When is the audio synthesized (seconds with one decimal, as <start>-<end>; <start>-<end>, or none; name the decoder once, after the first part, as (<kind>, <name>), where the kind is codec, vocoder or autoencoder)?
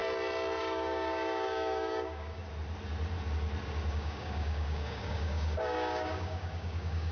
0.6-2.4 (codec, DAC); 3.9-7.1